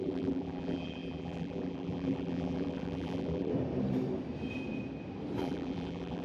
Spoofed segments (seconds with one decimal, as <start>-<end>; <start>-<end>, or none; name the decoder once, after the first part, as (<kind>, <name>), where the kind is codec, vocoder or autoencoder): 0.0-3.5 (vocoder, BigVGAN v2); 5.4-6.2